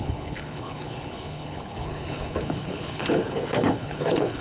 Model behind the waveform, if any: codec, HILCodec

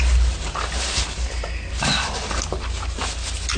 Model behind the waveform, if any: none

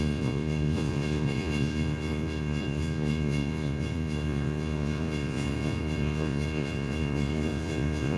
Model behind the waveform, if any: vocoder, Vocos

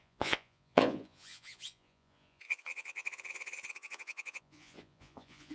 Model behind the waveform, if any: vocoder, Vocos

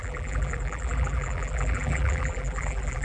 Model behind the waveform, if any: vocoder, BigVGAN v2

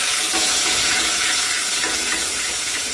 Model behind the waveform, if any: vocoder, Vocos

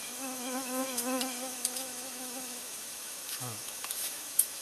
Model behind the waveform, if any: autoencoder, DAC-VAE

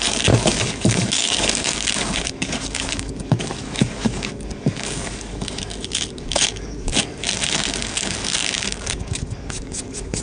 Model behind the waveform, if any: codec, DAC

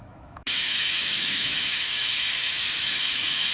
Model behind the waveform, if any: autoencoder, DAC-VAE